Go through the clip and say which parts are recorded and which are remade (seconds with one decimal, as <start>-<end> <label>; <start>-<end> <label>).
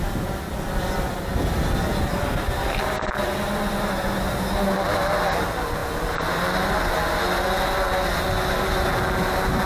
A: 0.0-9.7 recorded